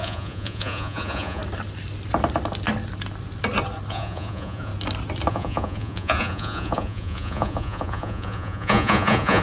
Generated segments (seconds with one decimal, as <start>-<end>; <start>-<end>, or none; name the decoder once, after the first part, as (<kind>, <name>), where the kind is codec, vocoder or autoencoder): 0.0-1.4 (vocoder, Vocos); 3.9-4.7; 5.3-9.4